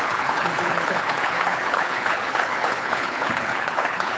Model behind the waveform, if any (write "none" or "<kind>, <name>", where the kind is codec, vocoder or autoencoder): codec, HILCodec